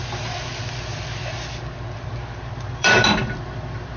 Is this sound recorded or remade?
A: remade